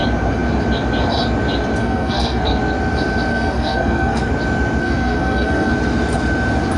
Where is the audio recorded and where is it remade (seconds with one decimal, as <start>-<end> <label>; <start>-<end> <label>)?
0.0-1.8 recorded; 1.8-2.6 remade; 2.6-3.3 recorded; 3.3-4.3 remade; 4.3-4.8 recorded; 4.8-5.7 remade; 5.7-6.8 recorded